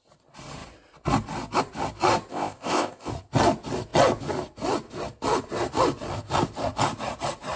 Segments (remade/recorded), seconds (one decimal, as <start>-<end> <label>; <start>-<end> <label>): 0.0-2.3 recorded; 2.3-3.1 remade; 3.1-7.6 recorded